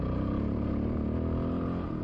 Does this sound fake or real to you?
real